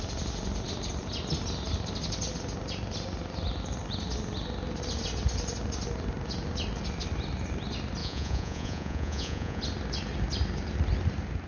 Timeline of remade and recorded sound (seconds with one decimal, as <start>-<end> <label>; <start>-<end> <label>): 0.0-8.0 recorded; 8.0-9.6 remade; 9.6-11.5 recorded